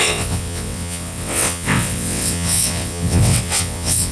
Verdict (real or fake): fake